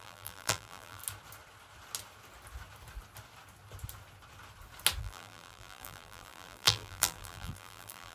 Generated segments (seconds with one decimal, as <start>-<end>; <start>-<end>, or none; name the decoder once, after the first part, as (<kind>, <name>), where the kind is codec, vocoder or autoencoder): 0.0-1.0 (vocoder, BigVGAN v2); 5.0-8.1